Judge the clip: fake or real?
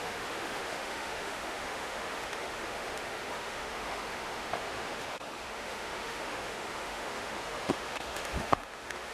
fake